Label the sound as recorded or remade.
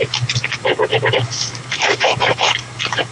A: remade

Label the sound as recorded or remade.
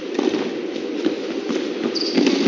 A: recorded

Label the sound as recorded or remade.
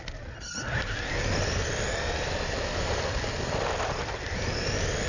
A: recorded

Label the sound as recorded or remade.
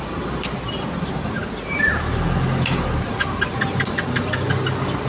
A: recorded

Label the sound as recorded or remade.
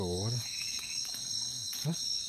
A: remade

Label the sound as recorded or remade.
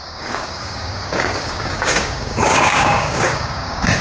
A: remade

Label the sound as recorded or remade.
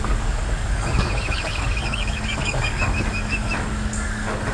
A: remade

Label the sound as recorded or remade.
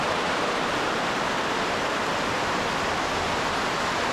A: recorded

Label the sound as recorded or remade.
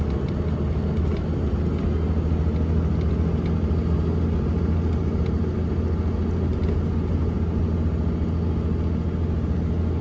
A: recorded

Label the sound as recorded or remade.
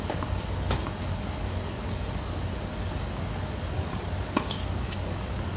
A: remade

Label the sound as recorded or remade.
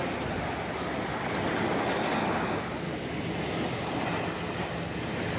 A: recorded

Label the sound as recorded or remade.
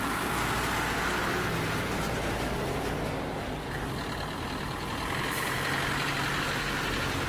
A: recorded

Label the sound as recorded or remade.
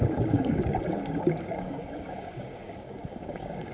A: remade